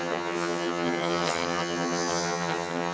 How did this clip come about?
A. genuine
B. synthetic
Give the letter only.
B